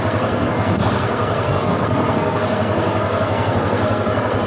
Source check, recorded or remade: remade